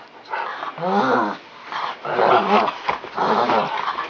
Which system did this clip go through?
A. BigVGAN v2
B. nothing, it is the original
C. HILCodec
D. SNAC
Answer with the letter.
B